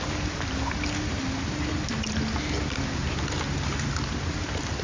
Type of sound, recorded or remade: recorded